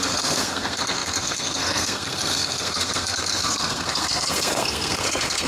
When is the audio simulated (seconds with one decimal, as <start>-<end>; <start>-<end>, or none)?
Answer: 0.0-5.5